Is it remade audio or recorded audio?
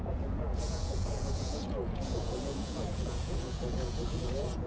remade